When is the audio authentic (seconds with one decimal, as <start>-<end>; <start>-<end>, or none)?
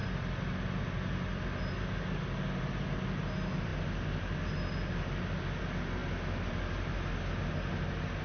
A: 0.0-8.2